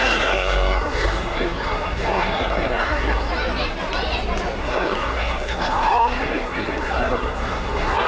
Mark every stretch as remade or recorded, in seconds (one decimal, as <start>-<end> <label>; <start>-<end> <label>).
0.0-3.3 remade; 3.3-4.6 recorded; 4.6-8.1 remade